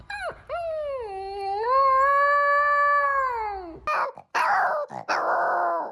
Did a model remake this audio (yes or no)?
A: no